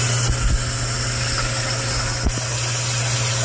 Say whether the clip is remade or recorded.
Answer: recorded